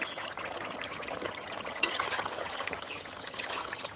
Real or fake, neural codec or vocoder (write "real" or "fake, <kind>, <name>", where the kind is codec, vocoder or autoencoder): fake, vocoder, HiFi-GAN